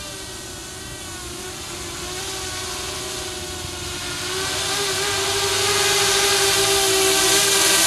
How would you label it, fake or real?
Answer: real